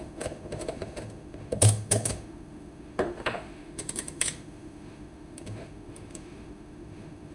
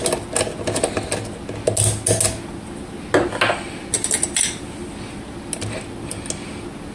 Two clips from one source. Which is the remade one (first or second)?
first